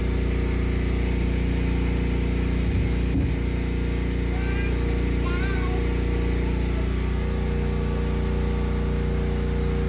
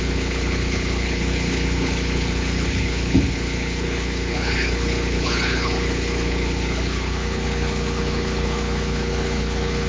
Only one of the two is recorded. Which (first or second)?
first